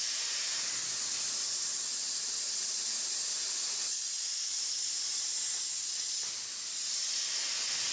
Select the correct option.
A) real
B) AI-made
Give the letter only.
A